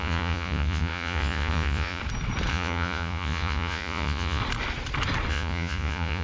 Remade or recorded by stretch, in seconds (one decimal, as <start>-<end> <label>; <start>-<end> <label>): 0.0-2.0 remade; 2.0-2.5 recorded; 2.5-4.4 remade; 4.4-5.3 recorded; 5.3-6.2 remade